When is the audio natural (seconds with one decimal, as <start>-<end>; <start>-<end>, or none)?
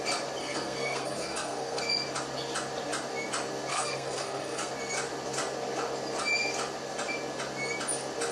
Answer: 0.0-0.4; 1.8-3.7; 4.7-8.3